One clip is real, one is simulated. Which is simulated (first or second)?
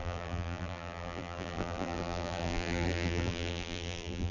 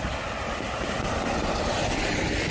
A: first